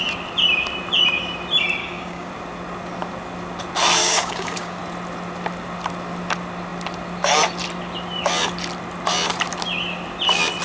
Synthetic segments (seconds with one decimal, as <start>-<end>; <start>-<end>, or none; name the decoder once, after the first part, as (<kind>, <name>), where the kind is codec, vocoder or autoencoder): 1.8-2.3 (codec, DAC); 4.0-4.8